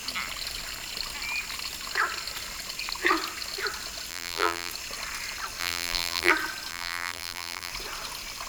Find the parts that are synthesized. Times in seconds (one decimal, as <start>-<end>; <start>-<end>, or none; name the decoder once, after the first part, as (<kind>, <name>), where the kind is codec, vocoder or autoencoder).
4.1-4.7 (vocoder, BigVGAN v2); 5.6-6.3; 6.7-7.7